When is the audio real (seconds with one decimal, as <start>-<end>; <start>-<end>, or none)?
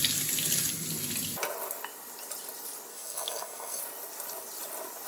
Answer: 0.0-2.9; 3.8-5.1